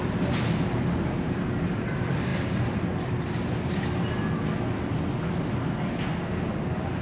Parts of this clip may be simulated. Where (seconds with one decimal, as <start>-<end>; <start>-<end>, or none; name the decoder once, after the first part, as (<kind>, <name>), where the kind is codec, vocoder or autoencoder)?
none